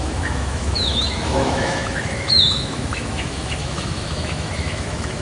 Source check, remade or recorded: remade